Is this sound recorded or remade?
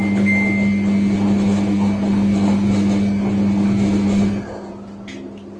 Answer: recorded